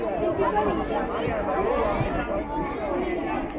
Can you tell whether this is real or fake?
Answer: real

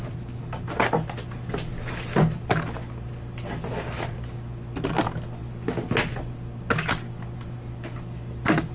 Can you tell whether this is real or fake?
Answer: real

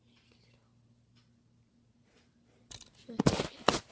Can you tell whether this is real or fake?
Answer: real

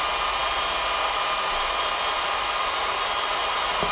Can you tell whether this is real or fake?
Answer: real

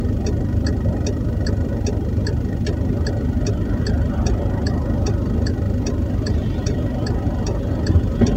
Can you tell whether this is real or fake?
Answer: real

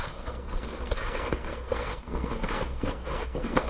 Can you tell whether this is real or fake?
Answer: fake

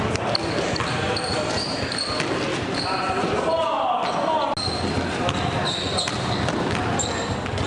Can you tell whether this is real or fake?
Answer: real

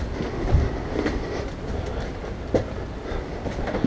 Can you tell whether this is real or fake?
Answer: real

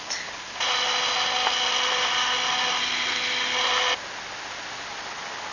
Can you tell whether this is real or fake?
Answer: real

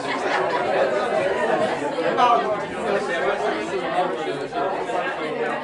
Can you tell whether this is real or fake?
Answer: real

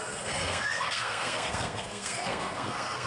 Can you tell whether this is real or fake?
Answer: fake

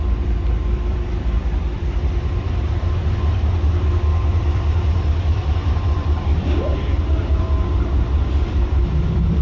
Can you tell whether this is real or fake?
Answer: fake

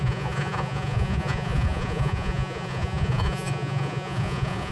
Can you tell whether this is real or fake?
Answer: fake